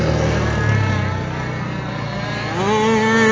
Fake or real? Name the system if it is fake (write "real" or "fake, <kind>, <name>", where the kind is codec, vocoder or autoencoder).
real